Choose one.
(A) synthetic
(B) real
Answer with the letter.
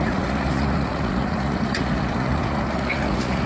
A